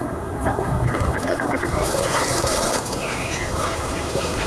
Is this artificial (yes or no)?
yes